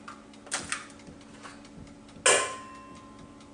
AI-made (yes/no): no